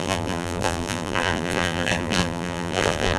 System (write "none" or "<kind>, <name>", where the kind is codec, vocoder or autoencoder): vocoder, BigVGAN v2